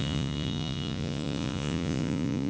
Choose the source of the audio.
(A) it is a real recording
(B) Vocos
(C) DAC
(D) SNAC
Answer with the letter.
B